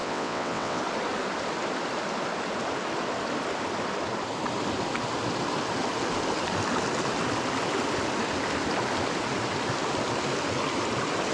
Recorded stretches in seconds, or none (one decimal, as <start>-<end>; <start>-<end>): 0.8-11.3